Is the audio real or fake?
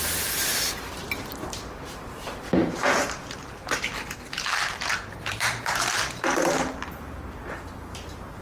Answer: fake